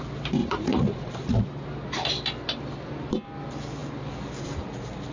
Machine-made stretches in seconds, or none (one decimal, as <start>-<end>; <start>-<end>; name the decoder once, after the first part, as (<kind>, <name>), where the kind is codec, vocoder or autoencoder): 0.4-1.1 (vocoder, Vocos)

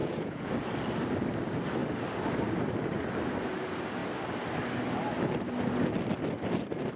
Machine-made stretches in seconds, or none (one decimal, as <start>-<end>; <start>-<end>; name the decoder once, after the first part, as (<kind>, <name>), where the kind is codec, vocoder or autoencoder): 0.0-0.5 (vocoder, Vocos)

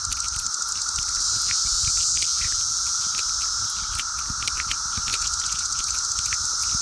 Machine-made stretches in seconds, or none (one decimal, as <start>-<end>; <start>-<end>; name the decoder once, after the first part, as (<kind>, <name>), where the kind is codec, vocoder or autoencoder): 2.3-3.1 (vocoder, Vocos); 5.1-5.8